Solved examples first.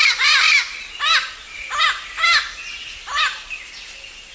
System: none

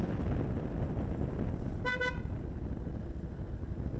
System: none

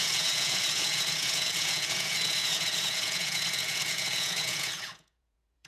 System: vocoder, Vocos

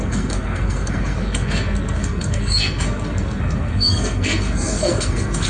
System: codec, SNAC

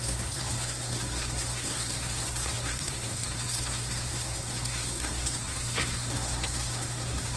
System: codec, SNAC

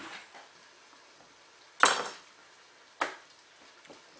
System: none